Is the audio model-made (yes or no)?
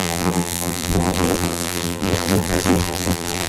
yes